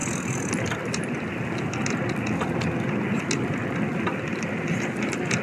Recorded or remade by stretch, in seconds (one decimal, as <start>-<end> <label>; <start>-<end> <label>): 0.0-5.4 recorded